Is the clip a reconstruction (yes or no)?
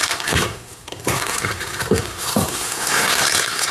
yes